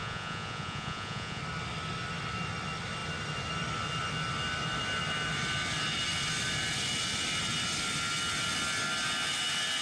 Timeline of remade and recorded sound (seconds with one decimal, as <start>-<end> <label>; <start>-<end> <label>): 0.0-1.4 remade; 1.4-9.8 recorded